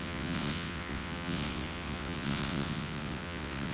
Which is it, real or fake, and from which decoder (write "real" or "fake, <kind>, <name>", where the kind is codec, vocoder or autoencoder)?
fake, vocoder, WaveNeXt